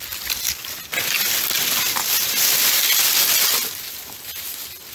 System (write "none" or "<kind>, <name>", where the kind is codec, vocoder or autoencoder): none